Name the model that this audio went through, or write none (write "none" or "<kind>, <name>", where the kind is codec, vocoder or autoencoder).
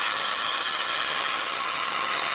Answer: vocoder, HiFi-GAN